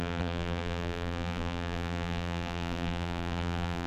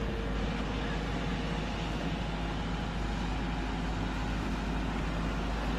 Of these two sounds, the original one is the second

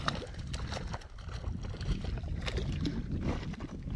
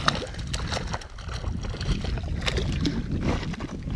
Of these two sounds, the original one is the second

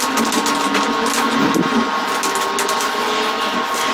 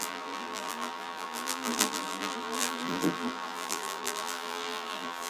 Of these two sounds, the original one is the first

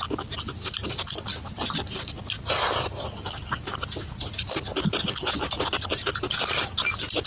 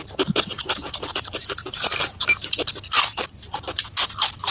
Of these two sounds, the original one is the first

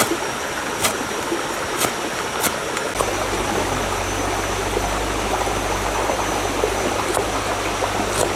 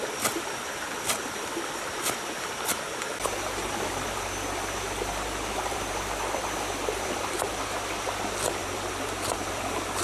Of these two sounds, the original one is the first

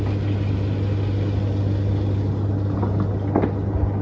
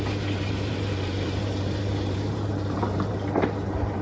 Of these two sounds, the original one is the first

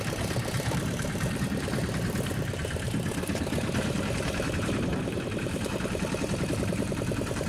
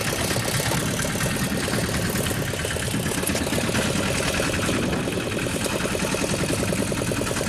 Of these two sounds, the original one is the second